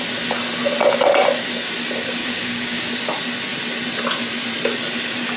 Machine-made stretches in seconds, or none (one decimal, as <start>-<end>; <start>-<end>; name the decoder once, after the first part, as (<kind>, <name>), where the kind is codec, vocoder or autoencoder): 2.2-2.9 (codec, DAC)